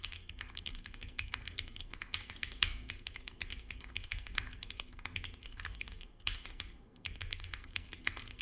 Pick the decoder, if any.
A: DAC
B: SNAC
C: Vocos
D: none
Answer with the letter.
B